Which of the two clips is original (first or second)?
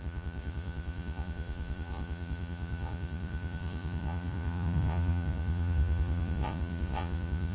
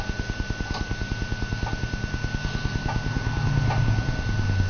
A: second